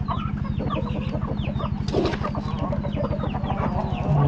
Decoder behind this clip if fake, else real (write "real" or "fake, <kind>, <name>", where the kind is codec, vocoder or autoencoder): real